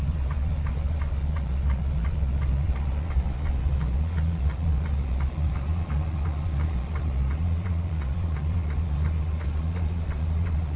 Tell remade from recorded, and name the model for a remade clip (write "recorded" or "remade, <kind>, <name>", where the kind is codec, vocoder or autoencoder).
remade, vocoder, Vocos